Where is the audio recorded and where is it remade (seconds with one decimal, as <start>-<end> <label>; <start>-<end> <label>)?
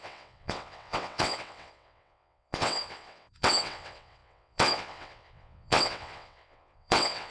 0.0-7.3 remade